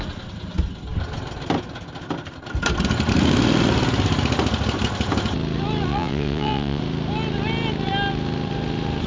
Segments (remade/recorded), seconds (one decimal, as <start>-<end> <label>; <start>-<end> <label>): 0.0-5.9 recorded; 5.9-6.8 remade; 6.8-9.1 recorded